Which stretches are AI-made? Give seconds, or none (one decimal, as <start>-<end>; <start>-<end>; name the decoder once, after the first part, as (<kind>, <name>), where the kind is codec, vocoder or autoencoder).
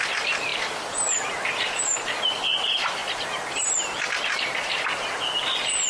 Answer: none